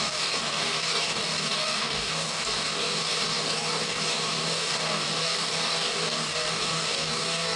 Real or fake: fake